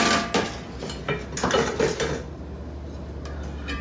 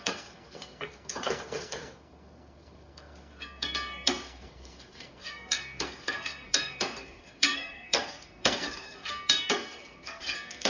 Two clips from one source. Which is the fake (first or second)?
second